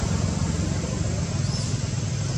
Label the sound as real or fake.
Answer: real